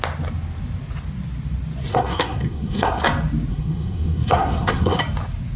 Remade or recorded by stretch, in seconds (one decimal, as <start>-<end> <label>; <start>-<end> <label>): 0.0-1.9 recorded; 1.9-3.0 remade; 3.0-3.5 recorded; 3.5-5.0 remade; 5.0-5.6 recorded